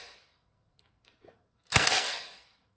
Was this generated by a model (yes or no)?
yes